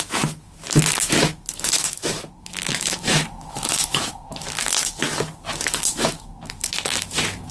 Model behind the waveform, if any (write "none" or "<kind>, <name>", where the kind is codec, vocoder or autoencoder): autoencoder, DAC-VAE